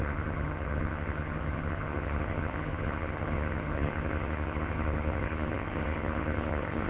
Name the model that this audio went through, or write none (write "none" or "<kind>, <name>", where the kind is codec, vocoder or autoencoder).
vocoder, HiFi-GAN